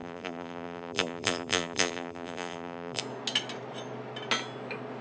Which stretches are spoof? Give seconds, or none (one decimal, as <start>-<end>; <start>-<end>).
0.0-3.0